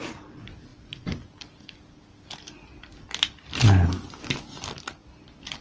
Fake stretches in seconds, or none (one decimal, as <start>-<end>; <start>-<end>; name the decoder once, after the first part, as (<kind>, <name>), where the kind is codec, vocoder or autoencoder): none